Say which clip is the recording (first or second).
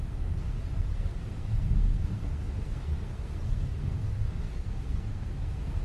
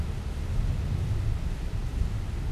second